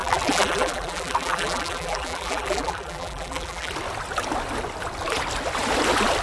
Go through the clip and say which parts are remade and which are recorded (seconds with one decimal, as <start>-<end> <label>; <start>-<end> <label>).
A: 0.0-3.7 remade; 3.7-6.2 recorded

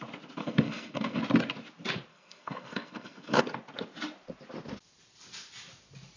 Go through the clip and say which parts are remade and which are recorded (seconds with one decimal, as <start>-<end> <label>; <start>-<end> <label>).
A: 0.0-0.4 recorded; 0.4-1.2 remade; 1.2-2.1 recorded; 2.1-3.4 remade; 3.4-6.2 recorded

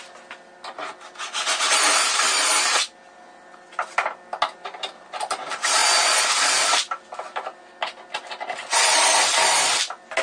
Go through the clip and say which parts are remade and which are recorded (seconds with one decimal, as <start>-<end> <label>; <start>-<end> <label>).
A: 0.0-10.2 recorded

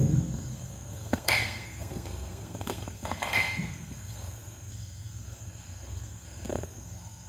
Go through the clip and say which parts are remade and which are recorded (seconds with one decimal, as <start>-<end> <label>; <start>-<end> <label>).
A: 0.0-7.3 remade

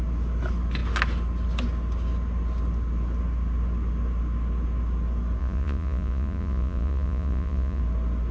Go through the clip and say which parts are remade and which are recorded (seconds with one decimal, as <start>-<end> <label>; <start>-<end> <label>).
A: 0.0-5.4 recorded; 5.4-7.8 remade; 7.8-8.3 recorded

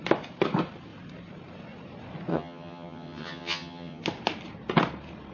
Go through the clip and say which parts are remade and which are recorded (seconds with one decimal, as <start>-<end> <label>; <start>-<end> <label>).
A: 0.0-2.3 recorded; 2.3-4.0 remade; 4.0-5.3 recorded

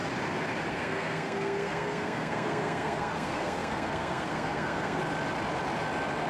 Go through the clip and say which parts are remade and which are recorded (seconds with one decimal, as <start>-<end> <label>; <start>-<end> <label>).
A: 0.0-0.7 recorded; 0.7-5.0 remade; 5.0-6.3 recorded

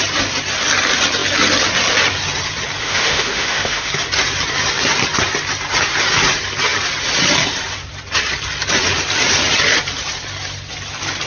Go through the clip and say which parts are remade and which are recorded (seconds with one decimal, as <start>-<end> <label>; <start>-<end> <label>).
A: 0.0-2.8 recorded; 2.8-3.9 remade; 3.9-11.3 recorded